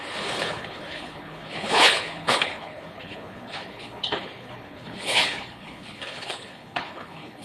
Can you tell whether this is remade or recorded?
remade